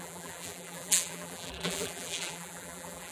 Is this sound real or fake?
fake